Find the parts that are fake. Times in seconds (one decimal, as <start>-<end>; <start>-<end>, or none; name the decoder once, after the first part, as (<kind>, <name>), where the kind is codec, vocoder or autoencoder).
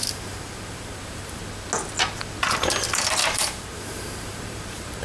0.0-1.4 (vocoder, BigVGAN v2); 3.2-5.0